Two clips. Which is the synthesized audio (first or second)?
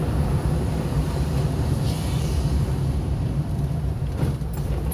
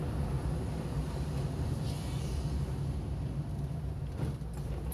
first